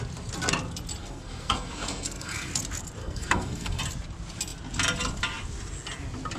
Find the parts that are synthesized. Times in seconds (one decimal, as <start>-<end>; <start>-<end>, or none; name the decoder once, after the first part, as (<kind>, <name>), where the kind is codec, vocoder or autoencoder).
1.0-2.5 (codec, SNAC); 3.0-3.8